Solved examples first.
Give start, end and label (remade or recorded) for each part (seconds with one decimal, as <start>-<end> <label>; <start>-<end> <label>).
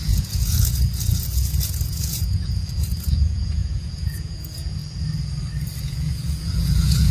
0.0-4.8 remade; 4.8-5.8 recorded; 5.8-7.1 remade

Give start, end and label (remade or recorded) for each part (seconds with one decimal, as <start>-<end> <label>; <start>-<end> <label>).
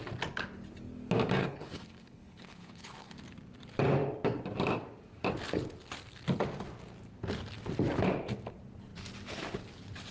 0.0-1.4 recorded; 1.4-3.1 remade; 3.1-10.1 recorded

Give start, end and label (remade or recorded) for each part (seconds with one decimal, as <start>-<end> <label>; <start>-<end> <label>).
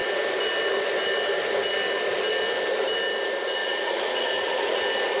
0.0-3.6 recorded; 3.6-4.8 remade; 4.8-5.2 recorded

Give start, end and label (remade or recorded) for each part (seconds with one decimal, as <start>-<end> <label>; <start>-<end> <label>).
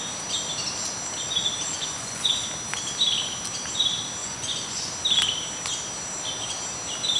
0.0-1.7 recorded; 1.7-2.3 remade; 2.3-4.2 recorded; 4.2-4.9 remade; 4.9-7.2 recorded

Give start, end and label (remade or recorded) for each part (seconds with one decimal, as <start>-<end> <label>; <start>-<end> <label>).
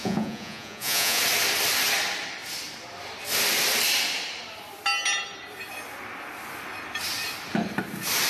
0.0-1.2 remade; 1.2-8.3 recorded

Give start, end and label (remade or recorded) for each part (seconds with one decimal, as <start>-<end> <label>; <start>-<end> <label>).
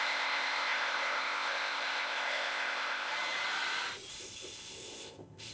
0.0-3.1 remade; 3.1-4.1 recorded; 4.1-5.5 remade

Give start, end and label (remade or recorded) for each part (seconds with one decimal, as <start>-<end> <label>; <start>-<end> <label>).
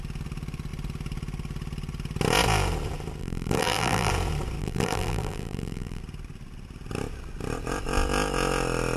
0.0-3.2 recorded; 3.2-4.1 remade; 4.1-4.6 recorded; 4.6-6.0 remade; 6.0-9.0 recorded